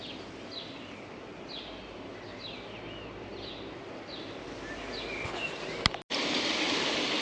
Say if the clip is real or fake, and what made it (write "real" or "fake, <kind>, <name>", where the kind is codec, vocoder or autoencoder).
real